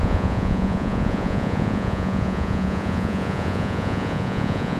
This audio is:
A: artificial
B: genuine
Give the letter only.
A